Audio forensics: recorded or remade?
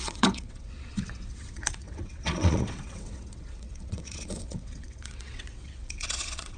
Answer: remade